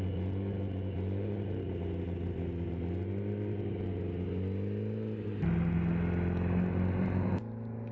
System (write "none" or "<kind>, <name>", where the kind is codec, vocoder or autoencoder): none